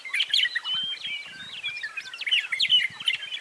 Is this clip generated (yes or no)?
no